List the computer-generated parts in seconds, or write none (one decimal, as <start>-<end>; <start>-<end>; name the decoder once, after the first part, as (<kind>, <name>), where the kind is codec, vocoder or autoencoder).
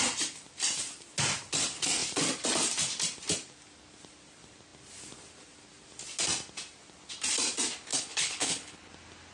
7.9-8.9 (codec, HILCodec)